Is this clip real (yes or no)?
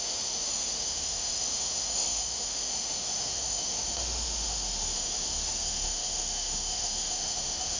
no